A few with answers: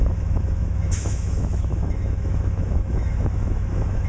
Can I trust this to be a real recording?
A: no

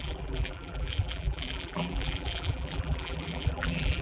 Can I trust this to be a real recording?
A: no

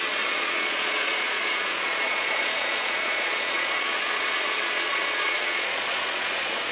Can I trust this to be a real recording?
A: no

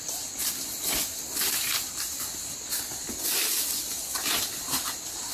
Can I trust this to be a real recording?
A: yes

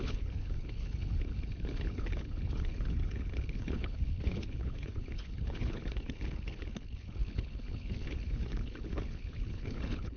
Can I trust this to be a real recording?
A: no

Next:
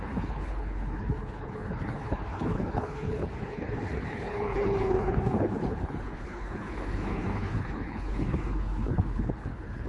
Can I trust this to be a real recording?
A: no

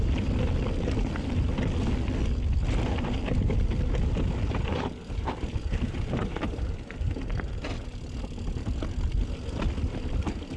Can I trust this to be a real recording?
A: yes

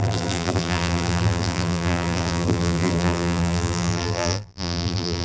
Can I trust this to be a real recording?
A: no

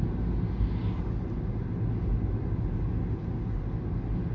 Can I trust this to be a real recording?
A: yes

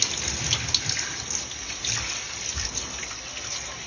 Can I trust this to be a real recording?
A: yes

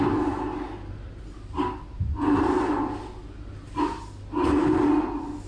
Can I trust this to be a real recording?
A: yes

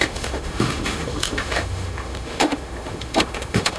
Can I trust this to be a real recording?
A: no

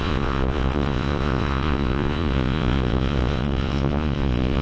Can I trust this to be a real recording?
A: no